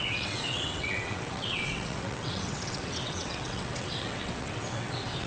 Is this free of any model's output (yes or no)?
no